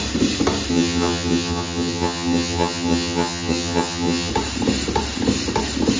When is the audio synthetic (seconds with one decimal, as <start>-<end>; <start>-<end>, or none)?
0.7-4.3